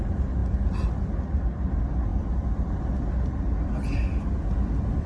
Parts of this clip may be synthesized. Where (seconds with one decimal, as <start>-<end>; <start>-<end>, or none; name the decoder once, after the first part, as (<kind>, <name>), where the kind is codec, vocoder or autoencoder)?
2.1-2.8 (vocoder, BigVGAN v2)